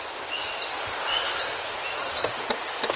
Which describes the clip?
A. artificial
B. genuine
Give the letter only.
B